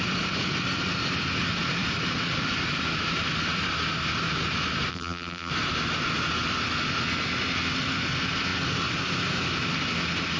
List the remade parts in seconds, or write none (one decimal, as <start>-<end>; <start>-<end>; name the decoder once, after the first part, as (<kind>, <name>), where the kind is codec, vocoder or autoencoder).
4.9-5.5 (vocoder, BigVGAN v2)